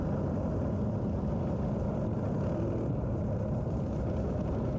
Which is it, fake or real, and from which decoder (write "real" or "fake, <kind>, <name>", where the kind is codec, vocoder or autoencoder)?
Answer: real